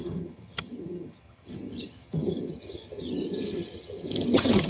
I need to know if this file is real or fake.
fake